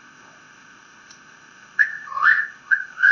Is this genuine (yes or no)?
no